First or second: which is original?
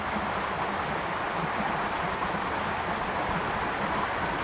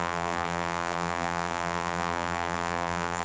first